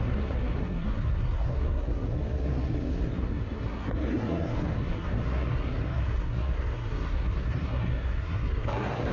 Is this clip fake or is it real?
fake